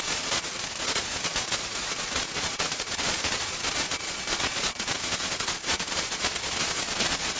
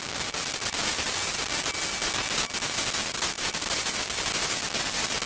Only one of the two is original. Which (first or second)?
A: second